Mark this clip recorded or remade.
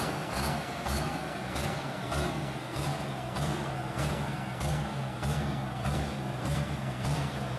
remade